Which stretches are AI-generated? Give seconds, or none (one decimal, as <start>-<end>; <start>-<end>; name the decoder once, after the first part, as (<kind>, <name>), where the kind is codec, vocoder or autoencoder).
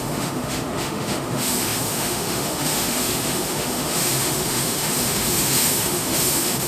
0.0-6.7 (autoencoder, DAC-VAE)